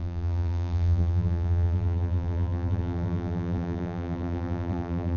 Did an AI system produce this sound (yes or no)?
yes